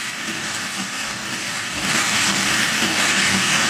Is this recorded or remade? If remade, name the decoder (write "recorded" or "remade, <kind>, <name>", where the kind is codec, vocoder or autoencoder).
remade, codec, DAC